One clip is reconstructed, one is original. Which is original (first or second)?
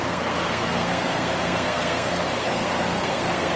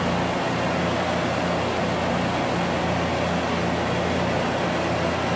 second